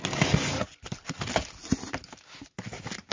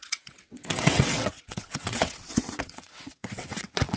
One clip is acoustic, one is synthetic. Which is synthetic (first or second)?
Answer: second